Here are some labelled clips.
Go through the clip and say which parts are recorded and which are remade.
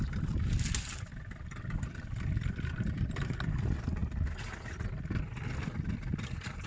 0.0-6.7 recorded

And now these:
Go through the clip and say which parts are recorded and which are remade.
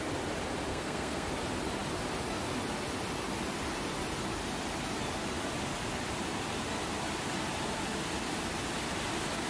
0.0-0.7 recorded; 0.7-1.3 remade; 1.3-9.5 recorded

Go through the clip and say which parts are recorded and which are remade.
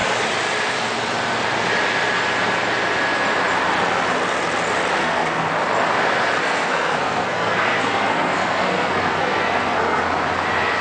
0.0-5.0 recorded; 5.0-5.5 remade; 5.5-6.4 recorded; 6.4-10.1 remade; 10.1-10.8 recorded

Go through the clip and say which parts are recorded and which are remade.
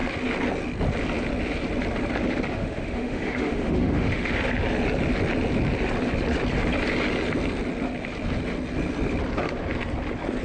0.0-2.5 recorded; 2.5-4.3 remade; 4.3-10.4 recorded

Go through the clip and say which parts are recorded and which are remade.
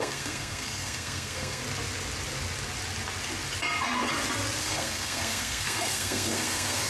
0.0-1.6 remade; 1.6-4.6 recorded; 4.6-6.9 remade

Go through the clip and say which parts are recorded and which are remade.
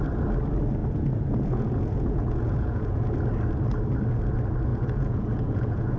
0.0-0.8 recorded; 0.8-3.1 remade; 3.1-4.7 recorded; 4.7-6.0 remade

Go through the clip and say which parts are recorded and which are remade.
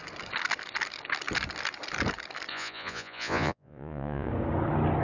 0.0-2.5 recorded; 2.5-4.3 remade; 4.3-5.0 recorded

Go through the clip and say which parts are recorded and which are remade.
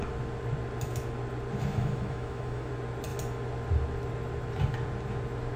0.0-1.8 recorded; 1.8-2.7 remade; 2.7-5.6 recorded